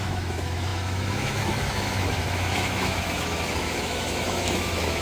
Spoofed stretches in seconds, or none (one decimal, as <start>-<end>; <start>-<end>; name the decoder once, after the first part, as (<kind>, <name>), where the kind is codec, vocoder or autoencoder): 0.0-5.0 (autoencoder, DAC-VAE)

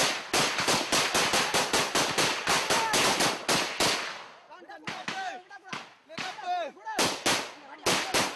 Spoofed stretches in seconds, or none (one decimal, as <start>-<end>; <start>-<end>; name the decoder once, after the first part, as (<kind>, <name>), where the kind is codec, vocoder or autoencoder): 5.0-5.8 (autoencoder, DAC-VAE)

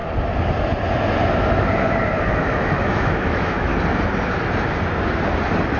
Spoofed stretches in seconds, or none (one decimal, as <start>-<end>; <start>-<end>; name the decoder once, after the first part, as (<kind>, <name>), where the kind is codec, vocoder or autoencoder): 2.3-3.7 (autoencoder, DAC-VAE)